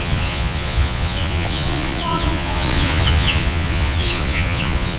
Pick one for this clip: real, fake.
fake